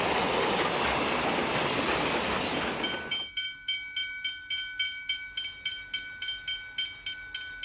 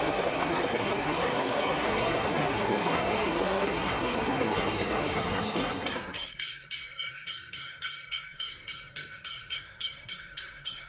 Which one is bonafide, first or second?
first